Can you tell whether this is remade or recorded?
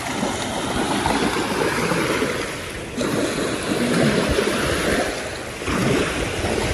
recorded